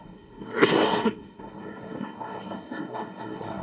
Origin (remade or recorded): remade